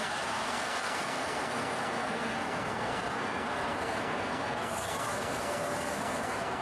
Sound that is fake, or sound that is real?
fake